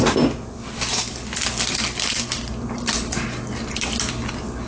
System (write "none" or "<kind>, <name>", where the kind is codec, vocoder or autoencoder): none